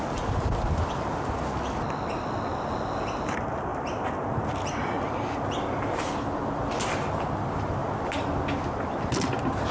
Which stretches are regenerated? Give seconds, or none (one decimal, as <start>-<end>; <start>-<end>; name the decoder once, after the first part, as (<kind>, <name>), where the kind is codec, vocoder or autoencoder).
none